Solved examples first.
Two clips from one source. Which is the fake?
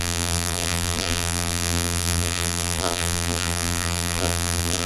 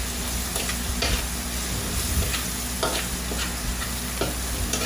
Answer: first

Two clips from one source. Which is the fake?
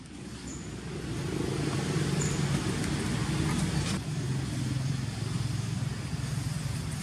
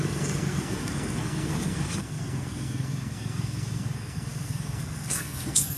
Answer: second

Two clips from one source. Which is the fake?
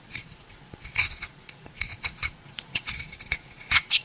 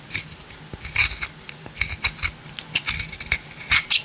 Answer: first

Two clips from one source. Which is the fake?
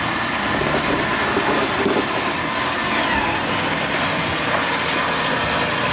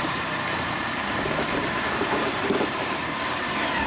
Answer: second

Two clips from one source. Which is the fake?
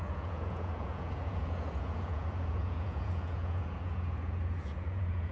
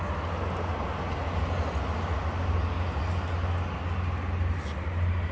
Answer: first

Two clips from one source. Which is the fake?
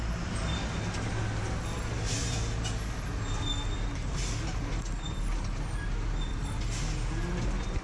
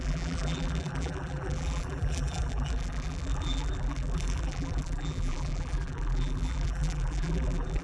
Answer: second